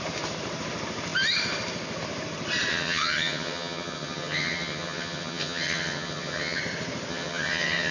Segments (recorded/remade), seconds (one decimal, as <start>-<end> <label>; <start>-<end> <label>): 0.0-2.7 recorded; 2.7-6.6 remade; 6.6-7.1 recorded; 7.1-7.9 remade